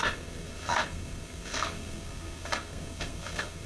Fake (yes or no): yes